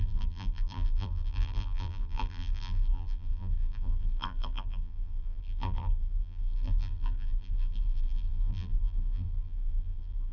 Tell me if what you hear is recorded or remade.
remade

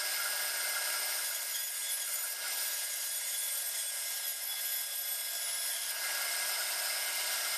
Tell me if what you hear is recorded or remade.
recorded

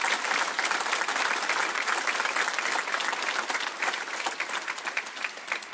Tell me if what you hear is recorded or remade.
remade